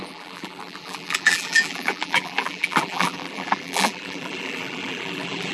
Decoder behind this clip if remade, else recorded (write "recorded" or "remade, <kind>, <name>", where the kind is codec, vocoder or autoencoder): remade, vocoder, BigVGAN v2